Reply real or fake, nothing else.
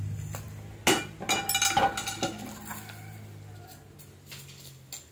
real